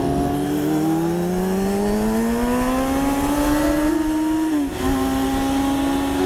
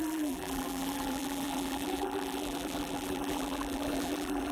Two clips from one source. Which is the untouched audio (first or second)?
first